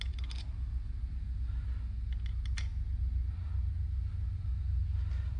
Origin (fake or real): real